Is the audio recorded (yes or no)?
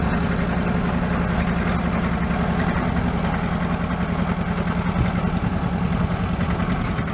yes